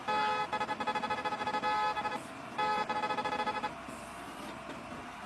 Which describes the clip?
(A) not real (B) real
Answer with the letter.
B